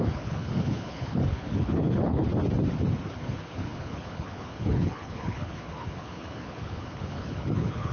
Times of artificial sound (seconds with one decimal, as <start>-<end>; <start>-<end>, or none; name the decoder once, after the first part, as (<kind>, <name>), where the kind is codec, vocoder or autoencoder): 0.0-2.3 (codec, HILCodec); 3.1-7.9